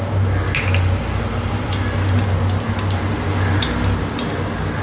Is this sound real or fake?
real